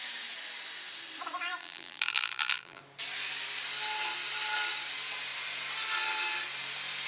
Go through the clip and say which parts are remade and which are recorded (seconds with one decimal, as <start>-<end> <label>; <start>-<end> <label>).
0.0-1.6 recorded; 1.6-2.8 remade; 2.8-7.1 recorded